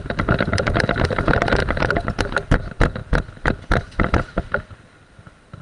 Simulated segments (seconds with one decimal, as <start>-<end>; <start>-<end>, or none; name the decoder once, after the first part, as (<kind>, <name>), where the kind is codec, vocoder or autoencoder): 1.6-2.2 (vocoder, BigVGAN v2); 3.0-5.6